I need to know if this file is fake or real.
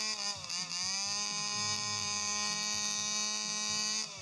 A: real